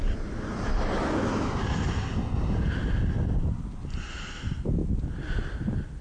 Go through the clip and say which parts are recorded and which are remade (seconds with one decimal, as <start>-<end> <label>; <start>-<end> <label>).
0.0-6.0 recorded